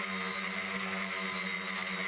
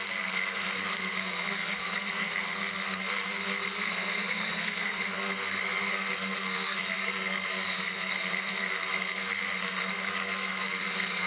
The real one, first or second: first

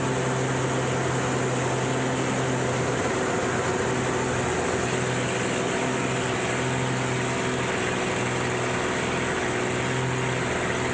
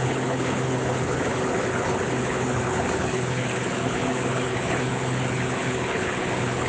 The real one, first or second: first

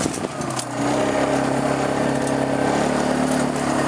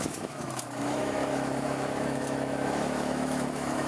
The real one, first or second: first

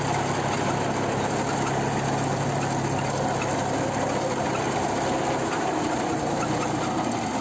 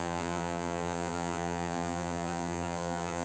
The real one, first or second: first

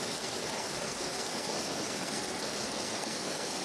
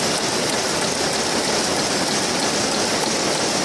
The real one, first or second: second